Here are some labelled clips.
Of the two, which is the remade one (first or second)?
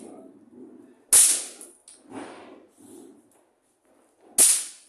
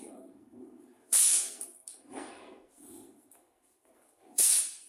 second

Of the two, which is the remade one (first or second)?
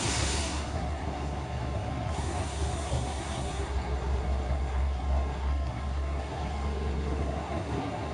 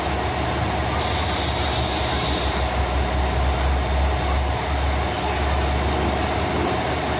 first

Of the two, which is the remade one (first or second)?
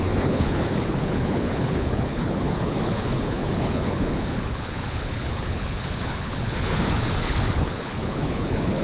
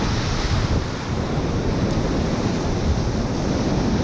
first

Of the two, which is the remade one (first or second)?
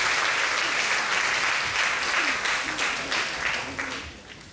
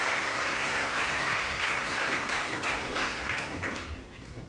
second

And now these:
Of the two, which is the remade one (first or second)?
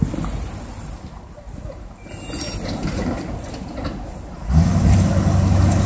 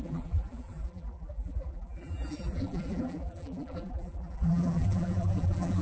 second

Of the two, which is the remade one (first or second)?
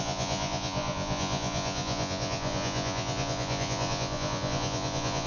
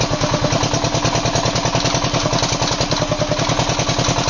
first